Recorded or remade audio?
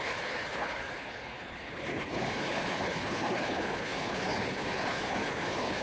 remade